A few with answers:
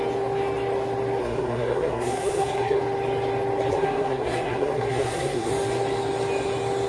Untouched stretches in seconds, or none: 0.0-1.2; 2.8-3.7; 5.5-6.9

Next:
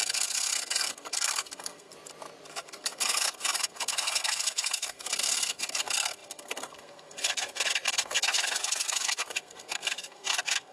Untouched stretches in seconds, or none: 1.9-2.6

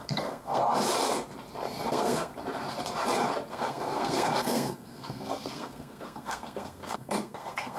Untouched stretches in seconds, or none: 0.6-1.9; 2.3-3.5

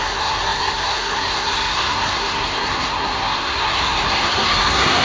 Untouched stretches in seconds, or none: none

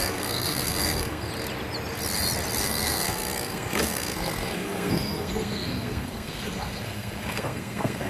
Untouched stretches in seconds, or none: 1.3-2.6